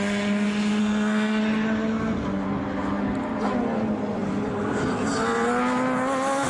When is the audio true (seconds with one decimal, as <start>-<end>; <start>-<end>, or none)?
0.0-0.8; 1.4-6.5